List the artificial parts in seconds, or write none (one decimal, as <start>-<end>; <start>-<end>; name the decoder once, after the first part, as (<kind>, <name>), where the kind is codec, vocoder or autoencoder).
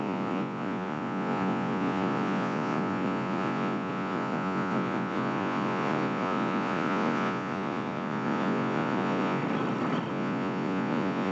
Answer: 0.0-9.4 (vocoder, Vocos); 10.1-11.3